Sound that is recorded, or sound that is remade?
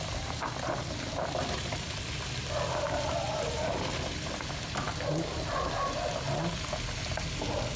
recorded